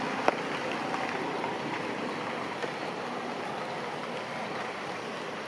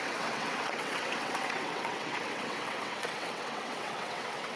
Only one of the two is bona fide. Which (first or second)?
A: first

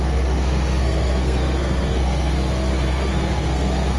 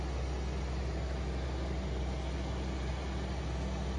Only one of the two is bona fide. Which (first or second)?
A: second